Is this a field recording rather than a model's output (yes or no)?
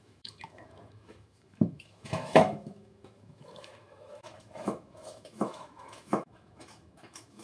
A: no